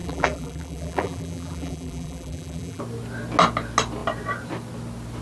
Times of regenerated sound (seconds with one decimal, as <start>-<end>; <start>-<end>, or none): 0.0-2.8